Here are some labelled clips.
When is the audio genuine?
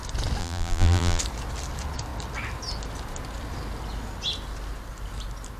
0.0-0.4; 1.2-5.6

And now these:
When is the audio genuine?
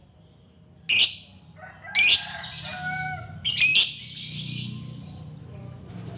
0.0-6.2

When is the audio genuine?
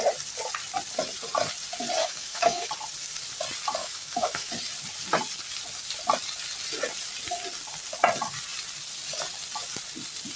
0.0-2.0; 2.7-3.8; 4.5-10.4